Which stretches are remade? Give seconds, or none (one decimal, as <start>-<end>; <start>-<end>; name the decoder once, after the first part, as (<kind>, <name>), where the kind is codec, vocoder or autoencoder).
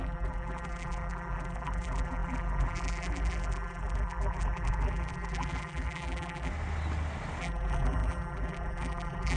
0.0-6.5 (vocoder, BigVGAN v2); 7.4-9.4